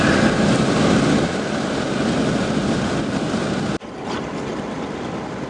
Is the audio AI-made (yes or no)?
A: no